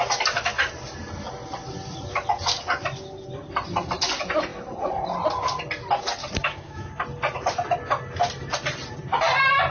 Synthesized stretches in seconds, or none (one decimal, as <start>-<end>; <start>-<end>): 6.4-6.9